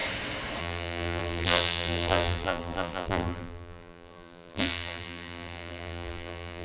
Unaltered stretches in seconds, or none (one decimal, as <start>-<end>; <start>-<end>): 0.0-0.6